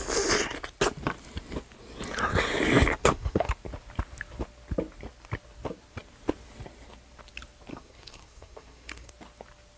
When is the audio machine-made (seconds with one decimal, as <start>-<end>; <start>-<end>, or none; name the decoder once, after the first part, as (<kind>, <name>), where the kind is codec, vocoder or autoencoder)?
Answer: 3.0-3.5 (codec, SNAC); 7.7-9.1